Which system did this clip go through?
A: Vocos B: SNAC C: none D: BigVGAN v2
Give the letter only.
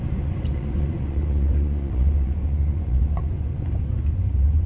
A